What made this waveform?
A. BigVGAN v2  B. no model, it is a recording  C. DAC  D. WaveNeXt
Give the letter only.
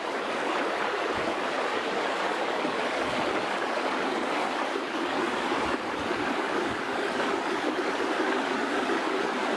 C